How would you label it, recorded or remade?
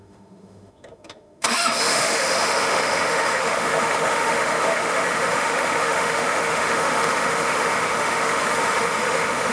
remade